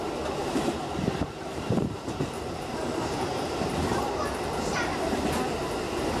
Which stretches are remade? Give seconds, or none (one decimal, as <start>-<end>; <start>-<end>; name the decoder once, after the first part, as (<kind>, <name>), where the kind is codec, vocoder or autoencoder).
0.4-4.1 (vocoder, BigVGAN v2)